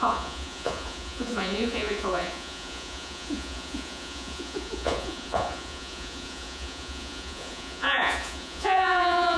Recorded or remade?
remade